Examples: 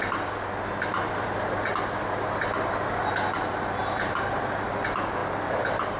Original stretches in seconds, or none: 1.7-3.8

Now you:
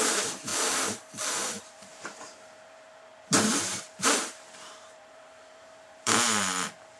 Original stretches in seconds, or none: 0.5-1.6

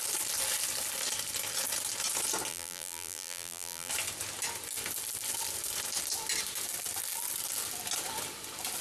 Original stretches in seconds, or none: 0.0-2.5; 3.9-8.8

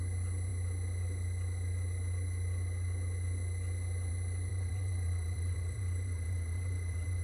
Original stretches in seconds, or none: 0.0-4.5

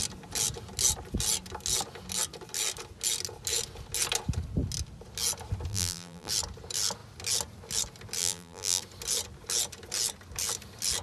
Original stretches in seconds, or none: 0.0-5.7; 6.3-8.2; 8.8-11.0